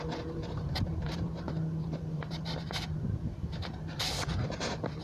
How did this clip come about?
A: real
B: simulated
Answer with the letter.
B